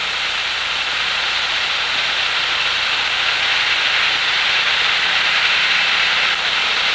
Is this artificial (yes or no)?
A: no